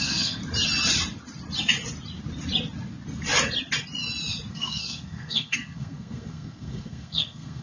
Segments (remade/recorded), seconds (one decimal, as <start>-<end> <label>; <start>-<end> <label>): 0.0-0.4 remade; 0.4-4.5 recorded; 4.5-7.6 remade